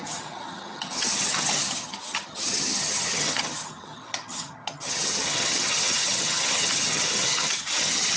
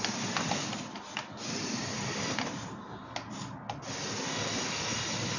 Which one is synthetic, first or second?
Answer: first